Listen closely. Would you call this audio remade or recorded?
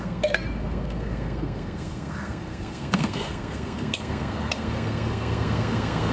remade